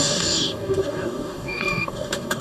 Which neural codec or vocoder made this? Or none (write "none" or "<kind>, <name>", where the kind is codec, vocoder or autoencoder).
codec, DAC